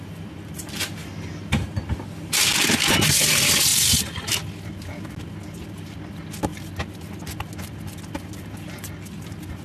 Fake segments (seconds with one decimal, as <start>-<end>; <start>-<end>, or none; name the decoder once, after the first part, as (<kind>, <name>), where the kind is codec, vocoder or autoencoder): 1.0-2.9 (vocoder, BigVGAN v2); 3.7-4.3